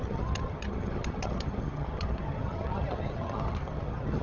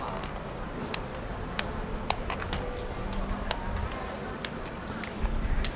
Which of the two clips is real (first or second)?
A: second